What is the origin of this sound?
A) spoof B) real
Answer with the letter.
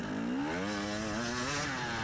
B